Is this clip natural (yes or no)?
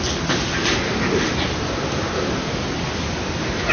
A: yes